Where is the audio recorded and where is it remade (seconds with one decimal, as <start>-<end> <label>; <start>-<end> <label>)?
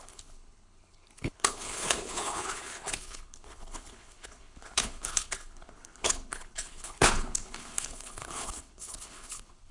0.0-9.7 remade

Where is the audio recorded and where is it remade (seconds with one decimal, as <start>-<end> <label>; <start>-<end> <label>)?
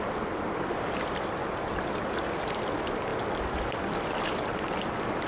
0.0-5.3 recorded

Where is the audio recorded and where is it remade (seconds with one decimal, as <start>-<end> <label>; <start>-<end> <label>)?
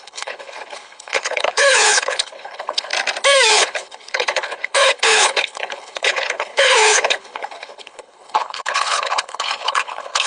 0.0-2.9 remade; 2.9-3.5 recorded; 3.5-10.3 remade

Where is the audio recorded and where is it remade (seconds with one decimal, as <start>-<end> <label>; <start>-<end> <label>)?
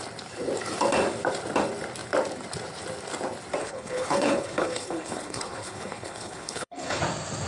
0.0-3.6 recorded; 3.6-7.0 remade; 7.0-7.5 recorded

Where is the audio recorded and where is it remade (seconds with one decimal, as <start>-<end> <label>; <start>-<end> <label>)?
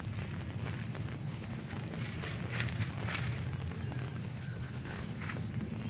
0.0-1.2 recorded; 1.2-1.7 remade; 1.7-4.2 recorded; 4.2-5.5 remade; 5.5-5.9 recorded